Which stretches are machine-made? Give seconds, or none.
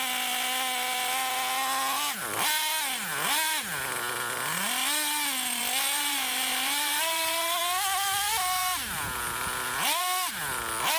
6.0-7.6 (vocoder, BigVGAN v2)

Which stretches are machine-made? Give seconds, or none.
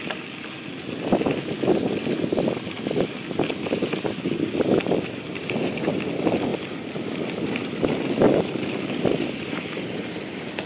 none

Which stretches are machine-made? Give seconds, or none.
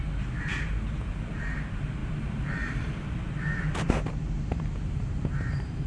0.0-5.9 (vocoder, BigVGAN v2)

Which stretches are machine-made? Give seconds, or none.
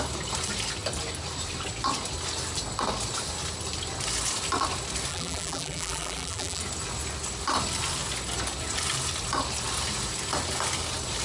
5.1-6.6 (vocoder, BigVGAN v2)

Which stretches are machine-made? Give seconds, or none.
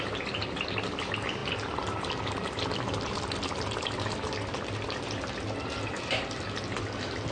none